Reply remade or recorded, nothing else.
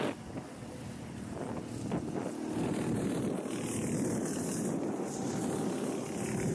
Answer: recorded